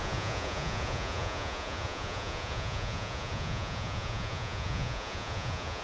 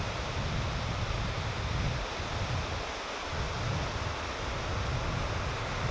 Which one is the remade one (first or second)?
first